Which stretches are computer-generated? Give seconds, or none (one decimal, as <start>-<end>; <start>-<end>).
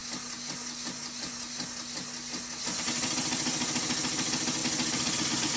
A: none